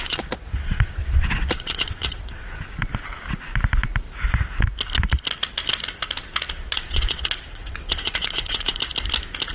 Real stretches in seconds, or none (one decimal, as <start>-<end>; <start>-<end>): 2.6-6.7; 8.8-9.5